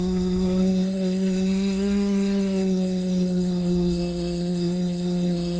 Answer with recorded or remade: remade